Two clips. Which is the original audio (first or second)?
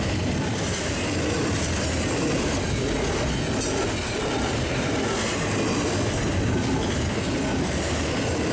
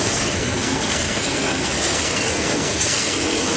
first